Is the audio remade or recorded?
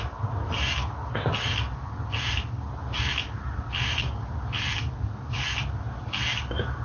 recorded